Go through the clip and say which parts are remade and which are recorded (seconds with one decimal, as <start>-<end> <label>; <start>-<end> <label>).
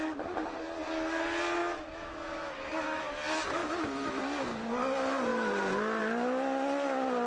0.0-1.6 recorded; 1.6-3.0 remade; 3.0-3.6 recorded; 3.6-4.2 remade; 4.2-7.3 recorded